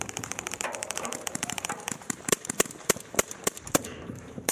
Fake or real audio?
fake